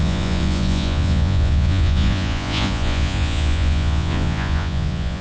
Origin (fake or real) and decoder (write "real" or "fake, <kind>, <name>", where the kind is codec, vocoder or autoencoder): fake, vocoder, Vocos